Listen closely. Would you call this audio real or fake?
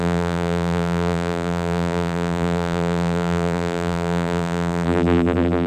fake